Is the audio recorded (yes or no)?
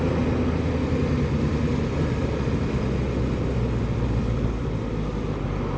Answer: yes